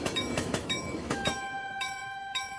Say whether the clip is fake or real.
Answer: fake